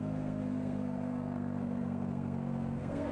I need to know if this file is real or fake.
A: fake